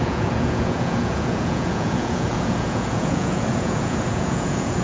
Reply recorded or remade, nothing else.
remade